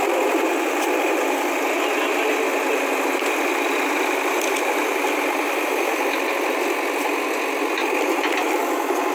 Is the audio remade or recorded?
recorded